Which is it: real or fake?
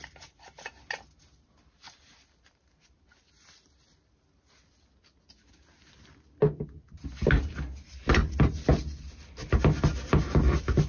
real